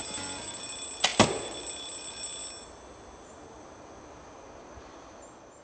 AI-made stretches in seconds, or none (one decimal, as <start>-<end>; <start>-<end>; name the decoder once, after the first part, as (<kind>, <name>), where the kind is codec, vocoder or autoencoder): none